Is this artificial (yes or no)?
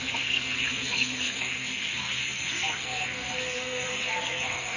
yes